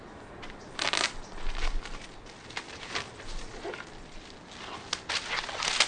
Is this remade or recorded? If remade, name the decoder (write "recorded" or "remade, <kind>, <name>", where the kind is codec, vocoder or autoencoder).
recorded